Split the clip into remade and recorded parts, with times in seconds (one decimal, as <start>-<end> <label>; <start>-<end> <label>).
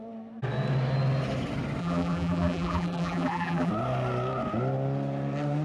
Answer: 0.0-1.8 recorded; 1.8-3.7 remade; 3.7-5.6 recorded